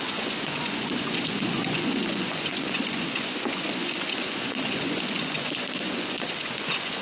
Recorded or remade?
remade